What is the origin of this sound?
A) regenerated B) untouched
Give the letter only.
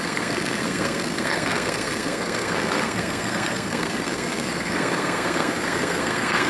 A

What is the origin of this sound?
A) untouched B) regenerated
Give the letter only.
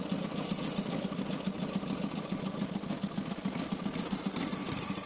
A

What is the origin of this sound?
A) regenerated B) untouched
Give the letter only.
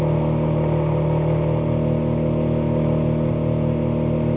B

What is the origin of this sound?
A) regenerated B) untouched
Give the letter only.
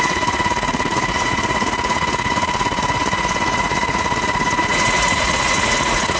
A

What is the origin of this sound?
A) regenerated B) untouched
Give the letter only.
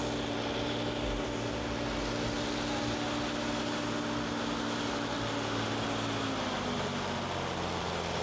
B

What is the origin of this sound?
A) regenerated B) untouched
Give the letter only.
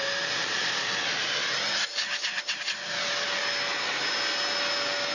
B